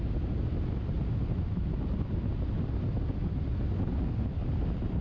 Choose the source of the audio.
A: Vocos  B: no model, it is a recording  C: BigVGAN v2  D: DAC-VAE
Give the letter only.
B